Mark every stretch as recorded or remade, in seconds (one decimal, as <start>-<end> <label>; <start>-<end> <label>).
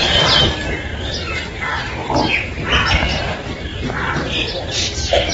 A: 0.0-2.0 recorded; 2.0-3.2 remade; 3.2-3.7 recorded; 3.7-5.3 remade